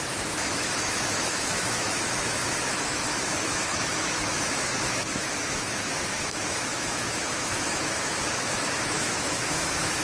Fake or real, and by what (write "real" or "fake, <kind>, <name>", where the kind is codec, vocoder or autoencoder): fake, autoencoder, DAC-VAE